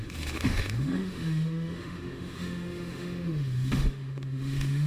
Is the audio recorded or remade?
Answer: remade